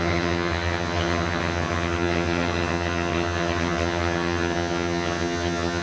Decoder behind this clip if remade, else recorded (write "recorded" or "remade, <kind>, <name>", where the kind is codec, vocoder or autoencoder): remade, vocoder, HiFi-GAN